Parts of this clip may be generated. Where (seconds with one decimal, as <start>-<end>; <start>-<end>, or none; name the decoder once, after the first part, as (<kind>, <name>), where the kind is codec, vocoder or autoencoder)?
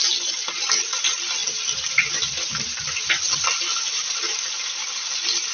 none